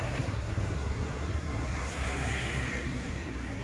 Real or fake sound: fake